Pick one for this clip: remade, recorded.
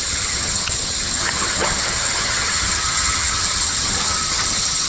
remade